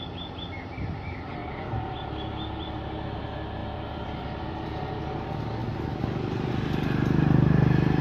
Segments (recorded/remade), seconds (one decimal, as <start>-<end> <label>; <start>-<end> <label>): 0.0-1.4 recorded; 1.4-2.9 remade; 2.9-3.6 recorded; 3.6-4.9 remade; 4.9-5.6 recorded; 5.6-6.5 remade; 6.5-8.0 recorded